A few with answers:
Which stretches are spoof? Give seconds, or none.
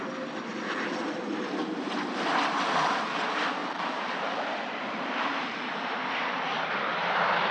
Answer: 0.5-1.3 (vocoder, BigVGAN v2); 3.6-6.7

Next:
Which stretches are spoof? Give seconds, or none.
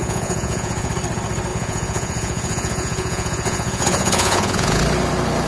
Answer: 0.0-0.9 (vocoder, Vocos); 1.5-4.8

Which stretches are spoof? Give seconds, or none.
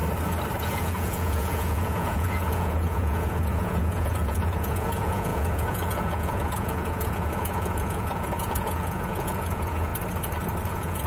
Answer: 0.6-9.9 (vocoder, Vocos); 10.7-11.1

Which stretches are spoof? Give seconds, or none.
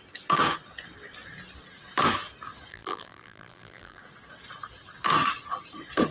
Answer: 2.7-4.0 (vocoder, BigVGAN v2)